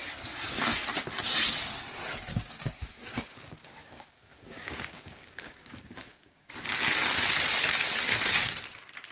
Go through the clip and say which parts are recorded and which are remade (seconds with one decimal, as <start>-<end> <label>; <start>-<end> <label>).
0.0-2.3 recorded; 2.3-6.5 remade; 6.5-9.1 recorded